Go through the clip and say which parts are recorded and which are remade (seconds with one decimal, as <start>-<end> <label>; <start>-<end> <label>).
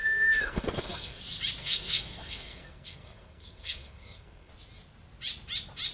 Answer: 0.0-1.2 remade; 1.2-1.6 recorded; 1.6-4.5 remade; 4.5-5.9 recorded